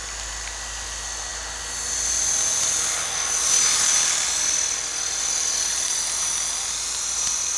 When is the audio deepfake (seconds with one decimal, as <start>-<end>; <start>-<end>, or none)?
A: none